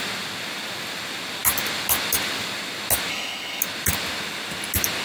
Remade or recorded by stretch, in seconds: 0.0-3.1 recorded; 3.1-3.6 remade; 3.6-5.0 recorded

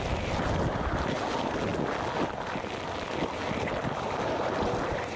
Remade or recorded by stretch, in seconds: 0.0-5.2 recorded

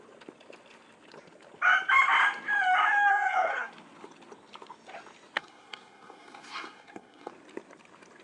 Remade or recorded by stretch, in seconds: 0.0-3.1 recorded; 3.1-3.7 remade; 3.7-5.4 recorded; 5.4-7.3 remade; 7.3-8.2 recorded

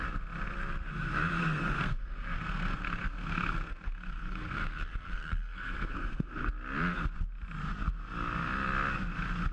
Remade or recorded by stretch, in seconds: 0.0-1.4 recorded; 1.4-6.5 remade; 6.5-9.5 recorded